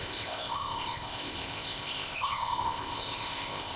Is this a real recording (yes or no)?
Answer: no